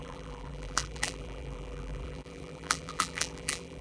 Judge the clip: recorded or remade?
remade